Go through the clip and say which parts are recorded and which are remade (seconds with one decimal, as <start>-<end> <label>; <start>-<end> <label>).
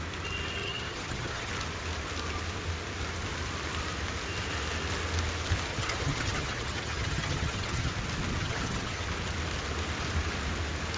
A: 0.0-0.6 recorded; 0.6-1.5 remade; 1.5-5.7 recorded; 5.7-7.9 remade; 7.9-8.4 recorded; 8.4-9.0 remade; 9.0-11.0 recorded